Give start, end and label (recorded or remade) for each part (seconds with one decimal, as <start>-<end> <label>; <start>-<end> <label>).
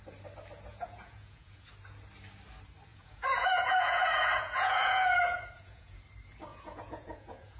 0.0-0.7 recorded; 0.7-1.7 remade; 1.7-2.9 recorded; 2.9-6.0 remade; 6.0-6.5 recorded; 6.5-7.6 remade